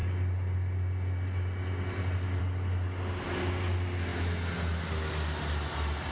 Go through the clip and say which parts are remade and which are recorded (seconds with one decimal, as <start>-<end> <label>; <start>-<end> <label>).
0.0-6.1 recorded